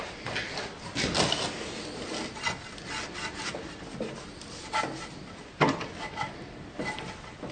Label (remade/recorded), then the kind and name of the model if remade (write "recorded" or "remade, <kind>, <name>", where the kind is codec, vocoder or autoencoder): recorded